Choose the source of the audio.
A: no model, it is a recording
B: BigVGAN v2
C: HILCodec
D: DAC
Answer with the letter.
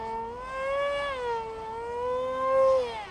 A